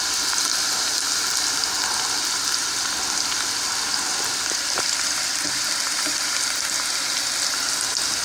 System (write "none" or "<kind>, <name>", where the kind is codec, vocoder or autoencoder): none